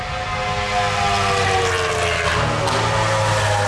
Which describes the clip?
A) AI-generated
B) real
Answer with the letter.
B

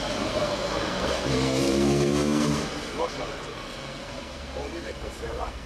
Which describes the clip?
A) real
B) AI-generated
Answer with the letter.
B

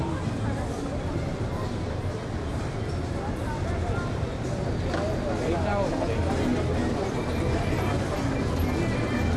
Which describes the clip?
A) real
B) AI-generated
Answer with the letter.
A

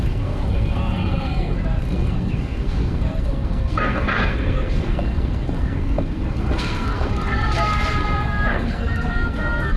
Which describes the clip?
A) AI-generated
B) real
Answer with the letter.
A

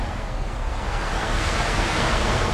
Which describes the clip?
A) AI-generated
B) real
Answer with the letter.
A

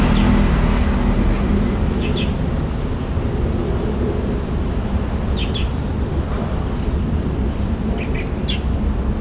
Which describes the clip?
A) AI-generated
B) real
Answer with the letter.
B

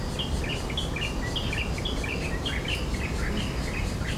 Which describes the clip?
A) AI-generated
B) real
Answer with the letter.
B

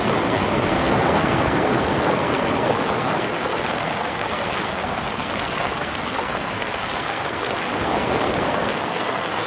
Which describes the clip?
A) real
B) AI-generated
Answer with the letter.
B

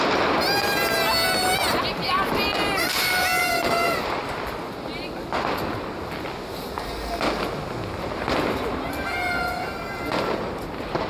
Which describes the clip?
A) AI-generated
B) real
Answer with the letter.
B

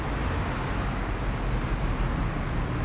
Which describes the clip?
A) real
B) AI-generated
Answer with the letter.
A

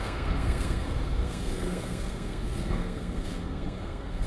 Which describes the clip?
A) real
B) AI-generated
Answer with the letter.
B